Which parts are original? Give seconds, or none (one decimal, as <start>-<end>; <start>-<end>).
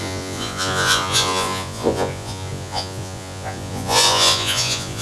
none